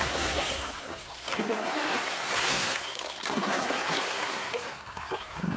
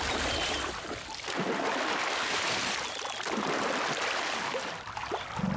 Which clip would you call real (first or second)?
second